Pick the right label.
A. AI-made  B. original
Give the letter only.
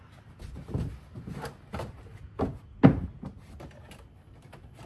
B